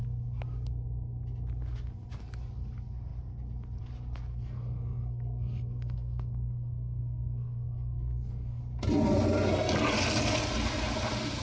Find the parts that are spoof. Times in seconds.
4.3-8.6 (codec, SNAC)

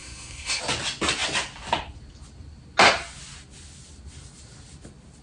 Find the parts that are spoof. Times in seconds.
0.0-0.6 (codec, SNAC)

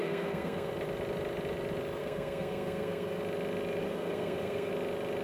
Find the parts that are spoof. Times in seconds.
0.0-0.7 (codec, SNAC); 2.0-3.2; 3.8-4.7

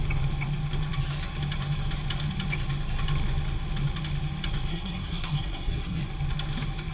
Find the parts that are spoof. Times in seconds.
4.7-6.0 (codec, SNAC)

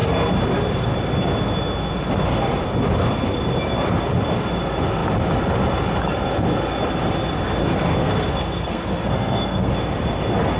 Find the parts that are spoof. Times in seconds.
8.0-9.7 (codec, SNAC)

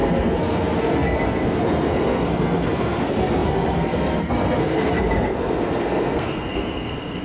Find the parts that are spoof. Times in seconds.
0.0-7.2 (codec, SNAC)

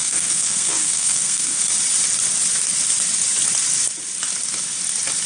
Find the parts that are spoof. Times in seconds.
0.0-1.6 (codec, SNAC)